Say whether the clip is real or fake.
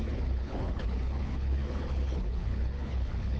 fake